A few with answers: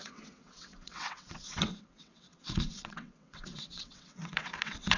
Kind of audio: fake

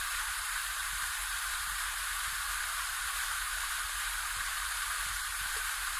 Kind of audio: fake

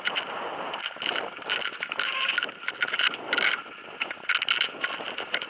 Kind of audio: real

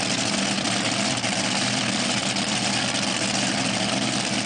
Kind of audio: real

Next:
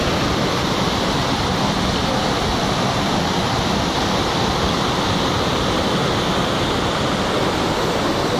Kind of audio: real